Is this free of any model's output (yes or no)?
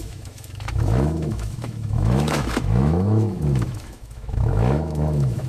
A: no